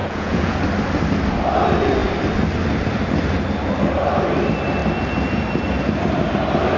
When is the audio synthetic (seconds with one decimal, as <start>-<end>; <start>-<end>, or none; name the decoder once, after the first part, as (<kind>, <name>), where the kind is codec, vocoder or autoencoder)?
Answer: 0.0-0.6 (vocoder, Vocos)